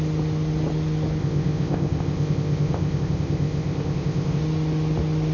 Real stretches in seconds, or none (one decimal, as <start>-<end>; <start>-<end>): 0.0-1.2; 4.4-5.3